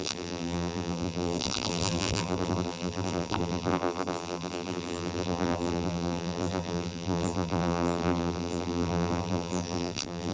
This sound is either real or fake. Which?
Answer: fake